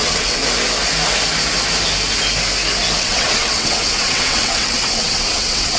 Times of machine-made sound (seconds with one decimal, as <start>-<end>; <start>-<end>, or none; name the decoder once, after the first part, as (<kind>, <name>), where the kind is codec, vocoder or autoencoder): 0.0-0.4 (vocoder, WaveNeXt); 3.0-5.8